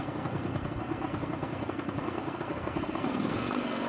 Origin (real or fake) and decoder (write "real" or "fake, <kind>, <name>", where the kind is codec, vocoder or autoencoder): fake, codec, SNAC